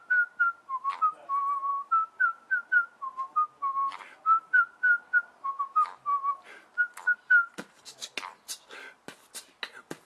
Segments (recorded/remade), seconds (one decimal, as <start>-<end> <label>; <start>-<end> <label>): 0.0-10.1 recorded